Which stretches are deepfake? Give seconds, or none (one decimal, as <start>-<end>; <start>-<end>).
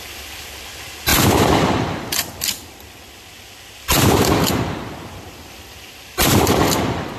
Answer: none